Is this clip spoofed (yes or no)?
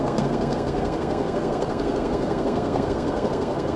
yes